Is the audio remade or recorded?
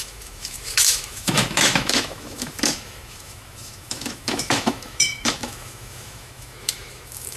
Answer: remade